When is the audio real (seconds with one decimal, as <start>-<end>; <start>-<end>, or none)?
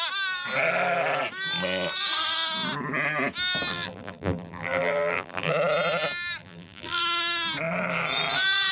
0.0-3.7; 5.5-6.4; 7.0-8.7